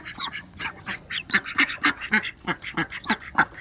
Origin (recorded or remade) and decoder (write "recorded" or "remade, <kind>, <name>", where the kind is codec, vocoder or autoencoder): remade, vocoder, Vocos